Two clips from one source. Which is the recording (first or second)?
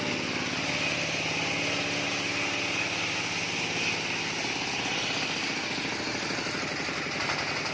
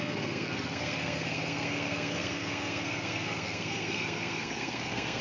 first